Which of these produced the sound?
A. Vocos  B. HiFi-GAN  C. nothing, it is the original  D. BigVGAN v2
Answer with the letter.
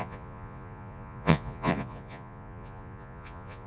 A